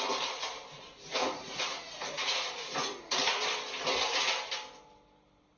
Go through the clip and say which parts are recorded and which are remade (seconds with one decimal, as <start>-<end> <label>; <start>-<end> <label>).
0.0-1.2 recorded; 1.2-3.4 remade; 3.4-5.6 recorded